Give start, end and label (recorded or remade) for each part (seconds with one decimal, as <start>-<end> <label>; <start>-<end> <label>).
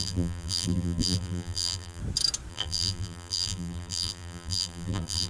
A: 0.0-2.0 remade; 2.0-2.5 recorded; 2.5-5.3 remade